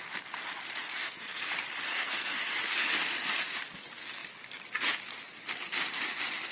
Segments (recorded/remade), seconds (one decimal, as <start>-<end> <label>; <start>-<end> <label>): 0.0-0.8 recorded; 0.8-1.4 remade; 1.4-1.9 recorded; 1.9-2.5 remade; 2.5-6.5 recorded